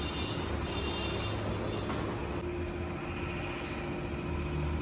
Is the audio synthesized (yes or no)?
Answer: no